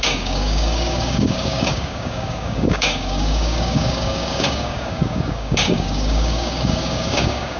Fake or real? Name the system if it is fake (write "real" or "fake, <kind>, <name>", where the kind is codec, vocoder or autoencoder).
fake, codec, DAC